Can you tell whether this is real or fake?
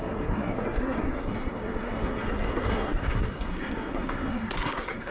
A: fake